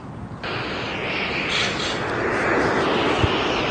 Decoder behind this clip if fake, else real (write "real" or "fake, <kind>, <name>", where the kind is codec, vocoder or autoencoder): real